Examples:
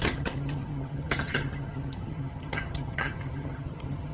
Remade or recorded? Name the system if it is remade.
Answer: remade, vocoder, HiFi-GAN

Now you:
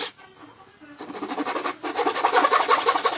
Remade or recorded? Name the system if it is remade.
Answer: recorded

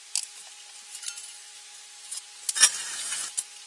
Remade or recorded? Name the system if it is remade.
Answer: recorded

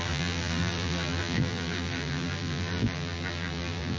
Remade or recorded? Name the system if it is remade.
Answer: remade, vocoder, BigVGAN v2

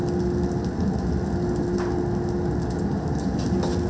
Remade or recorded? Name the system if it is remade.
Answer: recorded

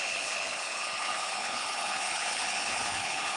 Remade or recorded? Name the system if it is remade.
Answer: remade, codec, HILCodec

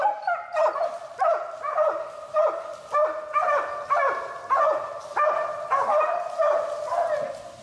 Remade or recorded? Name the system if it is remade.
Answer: recorded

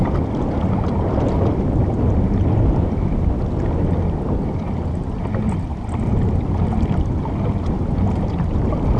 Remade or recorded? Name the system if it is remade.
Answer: recorded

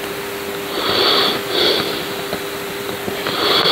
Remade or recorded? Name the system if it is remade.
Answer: recorded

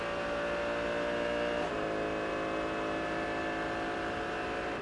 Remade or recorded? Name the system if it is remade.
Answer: recorded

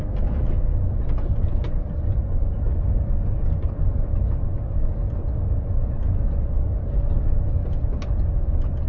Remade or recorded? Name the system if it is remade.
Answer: recorded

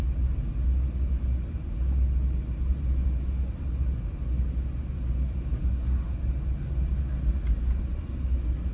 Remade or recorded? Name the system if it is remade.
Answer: recorded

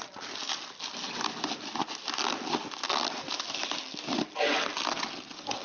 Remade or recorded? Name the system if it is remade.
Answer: recorded